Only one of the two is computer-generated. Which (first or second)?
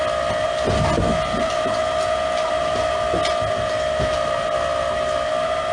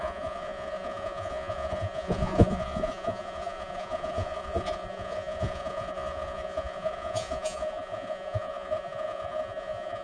second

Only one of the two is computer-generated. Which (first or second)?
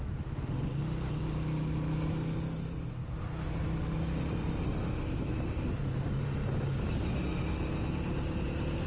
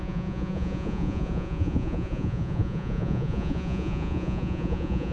second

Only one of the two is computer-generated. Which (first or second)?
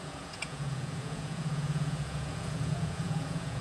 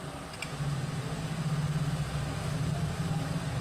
first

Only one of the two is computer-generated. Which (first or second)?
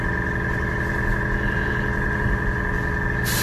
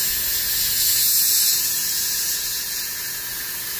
second